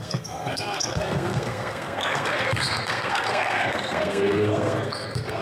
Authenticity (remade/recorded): remade